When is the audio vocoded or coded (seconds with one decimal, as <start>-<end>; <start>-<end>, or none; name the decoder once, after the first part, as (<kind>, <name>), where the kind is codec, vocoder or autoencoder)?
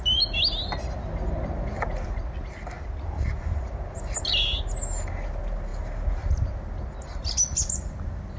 none